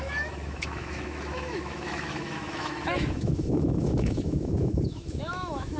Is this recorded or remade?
remade